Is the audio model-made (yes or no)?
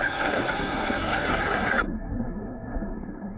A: yes